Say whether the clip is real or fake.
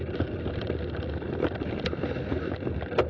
real